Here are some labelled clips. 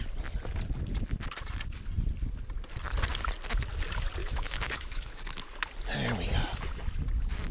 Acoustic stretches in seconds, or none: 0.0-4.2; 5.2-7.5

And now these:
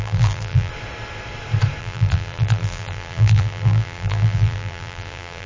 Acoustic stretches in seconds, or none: 0.7-1.8

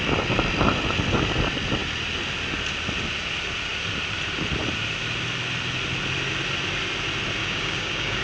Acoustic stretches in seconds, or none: 0.0-7.4

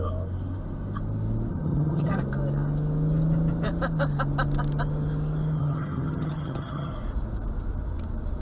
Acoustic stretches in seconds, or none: 0.0-1.5; 2.2-5.6; 6.9-8.4